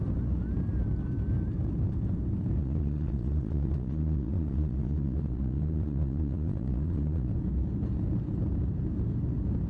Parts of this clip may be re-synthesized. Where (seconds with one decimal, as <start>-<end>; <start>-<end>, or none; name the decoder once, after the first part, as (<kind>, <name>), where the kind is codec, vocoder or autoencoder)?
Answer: 2.6-7.3 (vocoder, Vocos)